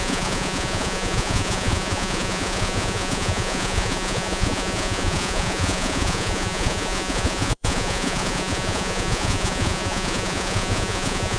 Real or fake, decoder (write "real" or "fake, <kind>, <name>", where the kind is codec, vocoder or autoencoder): fake, vocoder, Vocos